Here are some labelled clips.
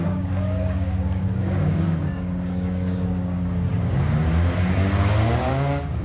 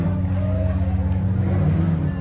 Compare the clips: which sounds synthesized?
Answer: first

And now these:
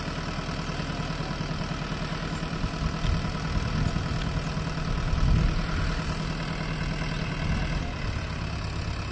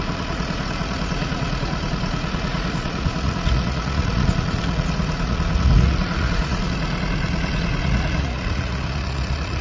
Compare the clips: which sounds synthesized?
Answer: second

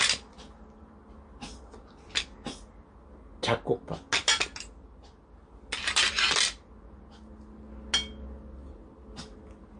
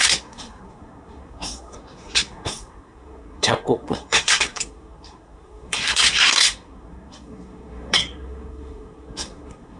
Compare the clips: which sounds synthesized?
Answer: second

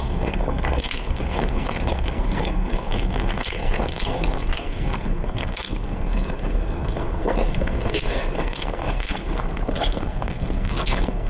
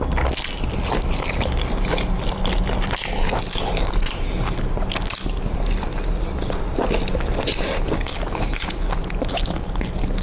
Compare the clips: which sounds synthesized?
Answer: first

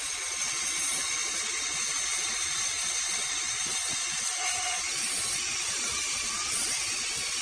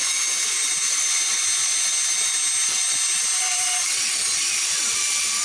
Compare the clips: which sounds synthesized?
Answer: first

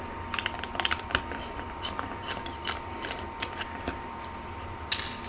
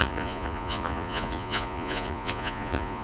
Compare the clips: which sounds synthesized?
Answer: second